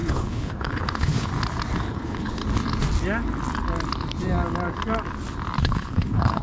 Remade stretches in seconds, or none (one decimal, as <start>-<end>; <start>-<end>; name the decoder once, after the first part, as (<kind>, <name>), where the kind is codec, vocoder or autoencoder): 0.0-1.3 (codec, HILCodec); 1.9-2.4; 5.6-6.4